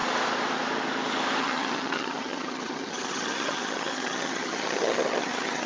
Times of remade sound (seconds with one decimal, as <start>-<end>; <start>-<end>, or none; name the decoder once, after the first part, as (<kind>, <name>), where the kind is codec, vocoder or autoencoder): 1.4-5.7 (vocoder, HiFi-GAN)

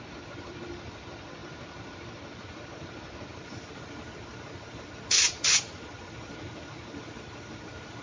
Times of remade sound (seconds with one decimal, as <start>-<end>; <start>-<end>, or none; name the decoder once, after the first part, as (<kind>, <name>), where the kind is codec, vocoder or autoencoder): 0.0-8.0 (vocoder, BigVGAN v2)

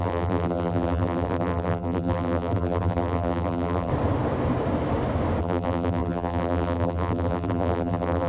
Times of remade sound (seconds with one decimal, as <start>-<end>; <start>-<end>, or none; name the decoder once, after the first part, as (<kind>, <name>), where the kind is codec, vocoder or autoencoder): 0.0-3.9 (vocoder, BigVGAN v2); 5.4-8.3

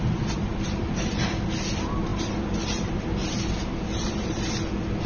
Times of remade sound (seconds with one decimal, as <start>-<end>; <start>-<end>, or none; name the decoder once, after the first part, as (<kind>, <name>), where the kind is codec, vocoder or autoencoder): 0.0-5.1 (vocoder, BigVGAN v2)